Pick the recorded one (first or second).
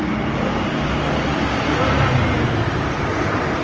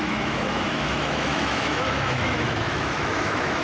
first